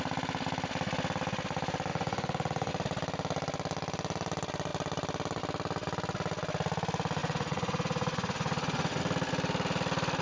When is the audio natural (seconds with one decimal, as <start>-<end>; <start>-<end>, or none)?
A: 0.0-1.9; 2.7-7.2; 9.0-10.2